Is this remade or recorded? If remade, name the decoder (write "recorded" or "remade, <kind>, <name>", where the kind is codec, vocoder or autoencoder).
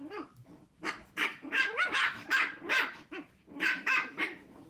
remade, autoencoder, DAC-VAE